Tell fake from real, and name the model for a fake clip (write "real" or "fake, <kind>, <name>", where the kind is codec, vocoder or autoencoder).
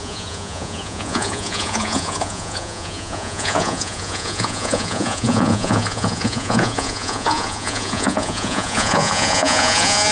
fake, vocoder, Vocos